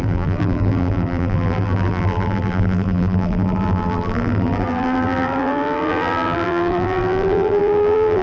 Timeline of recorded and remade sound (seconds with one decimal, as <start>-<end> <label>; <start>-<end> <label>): 0.0-8.2 remade

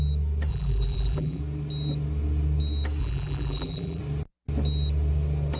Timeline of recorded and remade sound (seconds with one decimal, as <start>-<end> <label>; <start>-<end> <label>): 0.0-0.5 recorded; 0.5-1.4 remade; 1.4-3.0 recorded; 3.0-4.0 remade; 4.0-5.6 recorded

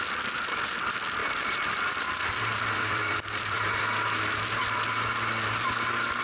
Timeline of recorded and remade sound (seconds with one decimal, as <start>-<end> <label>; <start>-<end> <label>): 0.0-1.2 recorded; 1.2-4.9 remade; 4.9-6.2 recorded